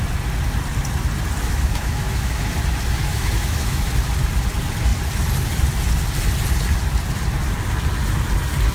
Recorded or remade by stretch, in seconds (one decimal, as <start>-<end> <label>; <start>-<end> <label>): 0.0-1.4 recorded; 1.4-2.5 remade; 2.5-3.1 recorded; 3.1-3.9 remade; 3.9-8.7 recorded

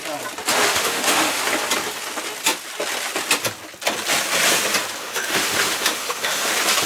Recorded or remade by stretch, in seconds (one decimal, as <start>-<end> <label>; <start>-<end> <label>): 0.0-0.5 recorded; 0.5-1.4 remade; 1.4-5.0 recorded; 5.0-6.5 remade; 6.5-6.9 recorded

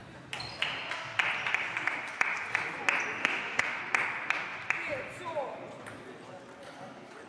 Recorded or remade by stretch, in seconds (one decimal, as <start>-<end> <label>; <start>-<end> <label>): 0.0-3.2 recorded; 3.2-3.8 remade; 3.8-7.3 recorded